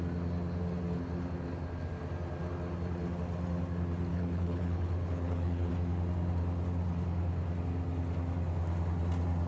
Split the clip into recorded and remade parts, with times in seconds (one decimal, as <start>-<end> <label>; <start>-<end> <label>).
0.0-4.1 recorded; 4.1-5.7 remade; 5.7-9.5 recorded